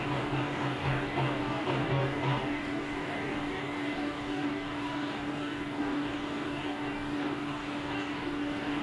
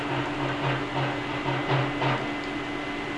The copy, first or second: first